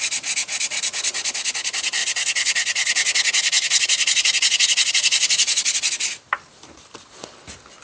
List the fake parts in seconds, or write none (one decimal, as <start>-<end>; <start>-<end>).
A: 2.0-6.2